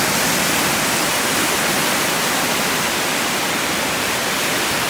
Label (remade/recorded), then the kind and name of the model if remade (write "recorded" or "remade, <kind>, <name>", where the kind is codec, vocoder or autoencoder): recorded